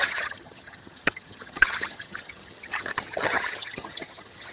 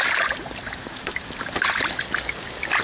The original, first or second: second